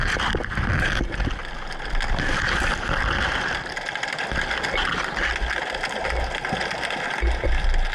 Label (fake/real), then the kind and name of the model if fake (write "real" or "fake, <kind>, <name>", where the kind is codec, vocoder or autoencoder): real